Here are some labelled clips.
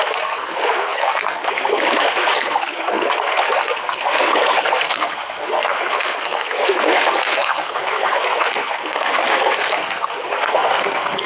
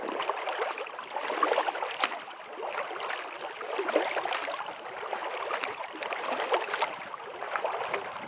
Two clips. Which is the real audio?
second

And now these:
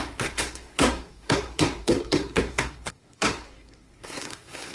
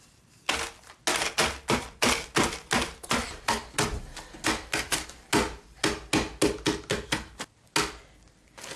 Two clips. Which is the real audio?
second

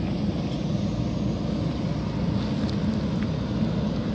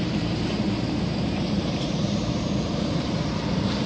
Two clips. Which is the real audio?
first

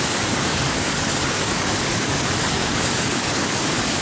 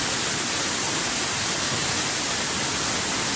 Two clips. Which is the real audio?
second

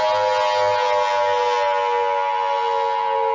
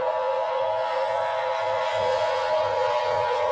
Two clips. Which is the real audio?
first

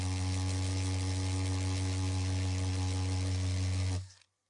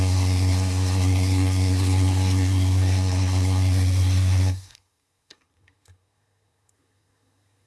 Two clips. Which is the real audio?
first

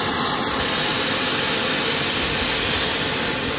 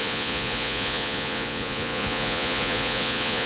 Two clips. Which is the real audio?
first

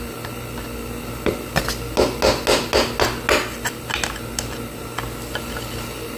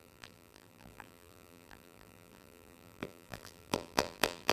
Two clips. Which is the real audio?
first